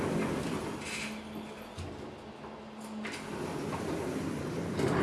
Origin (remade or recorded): recorded